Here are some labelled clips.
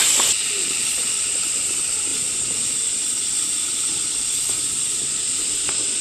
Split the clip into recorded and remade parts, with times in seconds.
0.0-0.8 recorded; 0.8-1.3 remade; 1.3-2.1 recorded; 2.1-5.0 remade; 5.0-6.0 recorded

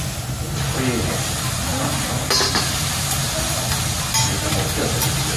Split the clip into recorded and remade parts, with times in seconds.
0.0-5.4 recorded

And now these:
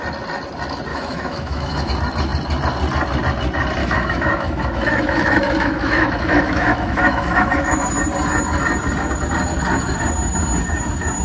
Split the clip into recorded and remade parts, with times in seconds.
0.0-0.9 recorded; 0.9-1.9 remade; 1.9-3.8 recorded; 3.8-7.9 remade; 7.9-11.2 recorded

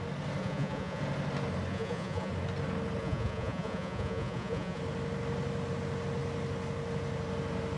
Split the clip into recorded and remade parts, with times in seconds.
0.0-0.4 recorded; 0.4-1.0 remade; 1.0-1.7 recorded; 1.7-2.3 remade; 2.3-3.0 recorded; 3.0-4.8 remade; 4.8-7.8 recorded

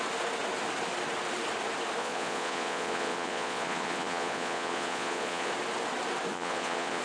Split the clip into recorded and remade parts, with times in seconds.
0.0-2.0 recorded; 2.0-5.5 remade; 5.5-6.3 recorded; 6.3-7.0 remade

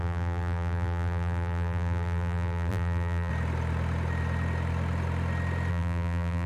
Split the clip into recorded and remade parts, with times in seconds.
0.0-3.3 remade; 3.3-5.7 recorded; 5.7-6.5 remade

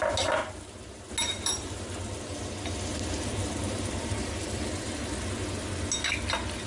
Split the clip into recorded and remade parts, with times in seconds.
0.0-6.7 recorded